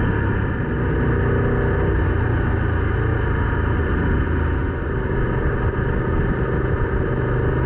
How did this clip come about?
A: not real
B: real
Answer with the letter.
B